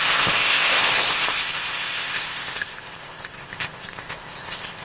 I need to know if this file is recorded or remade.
remade